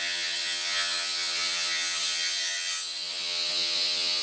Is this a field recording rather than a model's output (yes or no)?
no